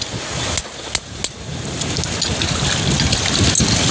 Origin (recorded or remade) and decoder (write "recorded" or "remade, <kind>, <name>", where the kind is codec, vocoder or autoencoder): recorded